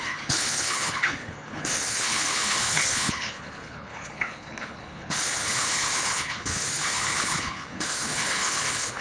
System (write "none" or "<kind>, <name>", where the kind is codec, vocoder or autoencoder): codec, HILCodec